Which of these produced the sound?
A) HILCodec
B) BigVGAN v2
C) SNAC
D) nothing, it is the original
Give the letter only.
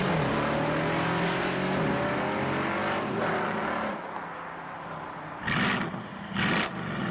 D